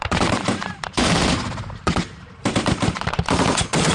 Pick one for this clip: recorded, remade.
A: remade